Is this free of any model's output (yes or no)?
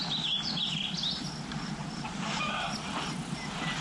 yes